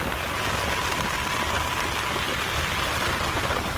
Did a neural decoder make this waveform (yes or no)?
no